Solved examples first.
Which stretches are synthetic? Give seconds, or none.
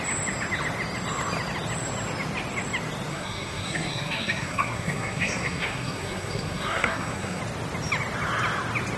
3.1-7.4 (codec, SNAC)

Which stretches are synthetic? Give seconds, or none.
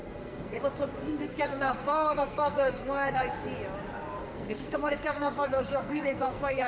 0.0-0.6 (codec, SNAC); 1.0-3.2; 4.2-6.7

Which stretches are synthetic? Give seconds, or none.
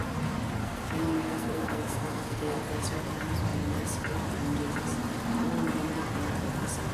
0.6-2.6 (codec, SNAC)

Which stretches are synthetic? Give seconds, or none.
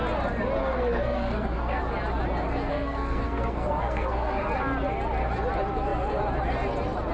0.6-1.8 (codec, SNAC); 2.7-4.4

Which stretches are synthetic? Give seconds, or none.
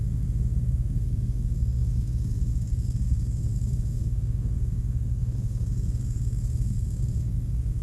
0.0-7.8 (codec, SNAC)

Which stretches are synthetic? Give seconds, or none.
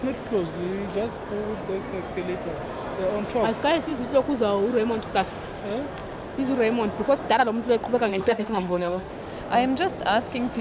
8.1-9.1 (codec, SNAC)